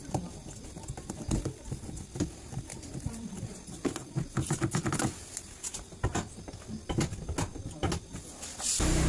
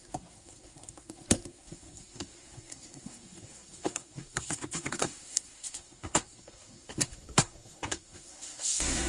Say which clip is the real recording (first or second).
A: first